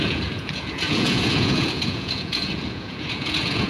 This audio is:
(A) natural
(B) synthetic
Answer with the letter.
B